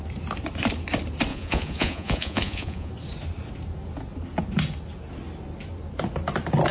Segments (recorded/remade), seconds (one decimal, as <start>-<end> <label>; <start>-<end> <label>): 0.0-1.3 recorded; 1.3-2.9 remade; 2.9-6.7 recorded